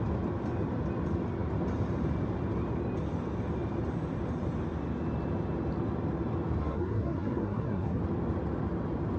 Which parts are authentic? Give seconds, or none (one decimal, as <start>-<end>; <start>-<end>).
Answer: 0.0-6.6; 8.0-9.2